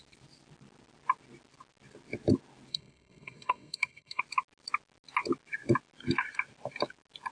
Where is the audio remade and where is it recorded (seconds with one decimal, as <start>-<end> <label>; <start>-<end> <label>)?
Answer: 0.0-2.7 recorded; 2.7-4.2 remade; 4.2-7.3 recorded